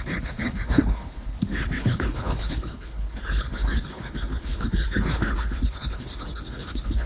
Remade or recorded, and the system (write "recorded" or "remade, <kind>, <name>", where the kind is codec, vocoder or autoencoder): remade, codec, HILCodec